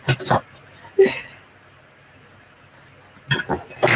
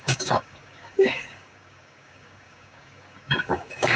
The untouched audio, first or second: first